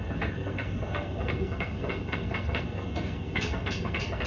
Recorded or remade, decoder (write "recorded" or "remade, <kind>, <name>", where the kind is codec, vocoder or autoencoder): remade, codec, SNAC